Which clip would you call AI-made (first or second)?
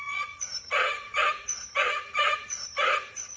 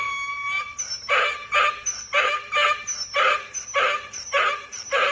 first